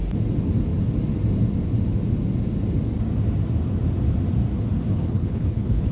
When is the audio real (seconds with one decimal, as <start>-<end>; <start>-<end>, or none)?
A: 0.0-4.9